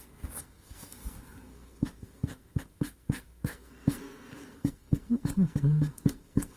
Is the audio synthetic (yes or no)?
yes